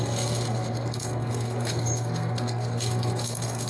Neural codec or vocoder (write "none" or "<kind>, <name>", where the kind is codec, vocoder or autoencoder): codec, SNAC